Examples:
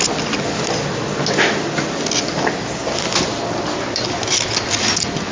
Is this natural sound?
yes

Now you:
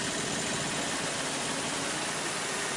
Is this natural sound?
yes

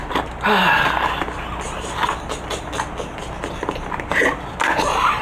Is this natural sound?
yes